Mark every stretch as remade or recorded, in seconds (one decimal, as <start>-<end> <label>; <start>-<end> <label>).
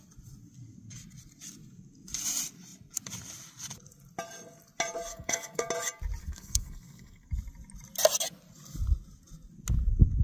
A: 0.0-5.1 recorded; 5.1-5.7 remade; 5.7-6.2 recorded; 6.2-7.3 remade; 7.3-10.2 recorded